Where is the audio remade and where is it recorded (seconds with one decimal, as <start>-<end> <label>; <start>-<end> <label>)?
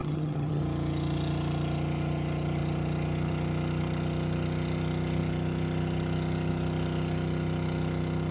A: 0.0-0.6 remade; 0.6-8.3 recorded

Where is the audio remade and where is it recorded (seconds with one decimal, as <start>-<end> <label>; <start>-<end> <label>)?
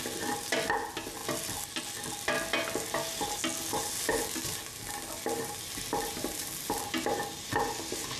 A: 0.0-8.2 recorded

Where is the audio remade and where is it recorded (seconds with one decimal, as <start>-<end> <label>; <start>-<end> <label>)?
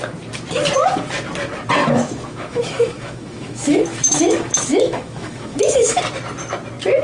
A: 0.0-1.8 recorded; 1.8-6.0 remade; 6.0-7.0 recorded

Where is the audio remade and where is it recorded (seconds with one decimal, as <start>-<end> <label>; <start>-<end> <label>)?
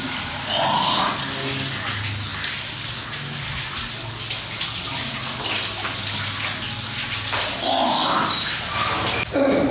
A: 0.0-9.7 recorded